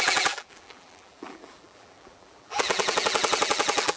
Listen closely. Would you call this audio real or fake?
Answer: fake